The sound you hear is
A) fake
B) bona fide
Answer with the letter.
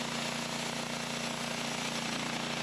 B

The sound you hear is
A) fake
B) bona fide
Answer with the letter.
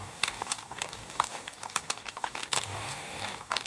A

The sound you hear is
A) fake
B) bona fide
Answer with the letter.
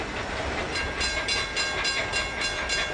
B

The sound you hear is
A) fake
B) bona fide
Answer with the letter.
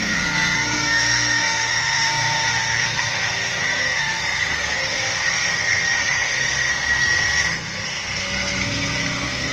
A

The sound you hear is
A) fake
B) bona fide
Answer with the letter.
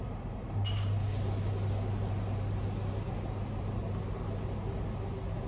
B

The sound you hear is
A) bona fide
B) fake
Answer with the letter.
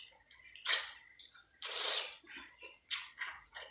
B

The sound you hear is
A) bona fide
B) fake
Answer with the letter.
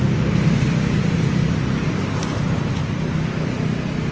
A